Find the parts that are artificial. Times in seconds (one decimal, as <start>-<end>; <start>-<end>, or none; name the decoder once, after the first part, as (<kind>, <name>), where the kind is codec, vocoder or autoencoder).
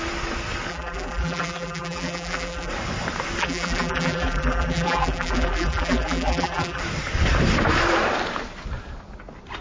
0.7-2.7 (vocoder, BigVGAN v2); 3.4-6.8